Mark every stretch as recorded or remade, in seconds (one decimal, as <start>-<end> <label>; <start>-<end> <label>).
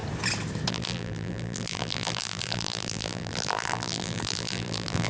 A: 0.0-0.7 recorded; 0.7-5.1 remade